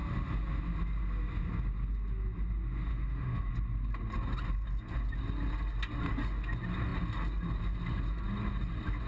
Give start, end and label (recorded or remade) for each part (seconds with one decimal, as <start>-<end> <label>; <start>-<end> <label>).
0.0-2.9 recorded; 2.9-3.5 remade; 3.5-9.1 recorded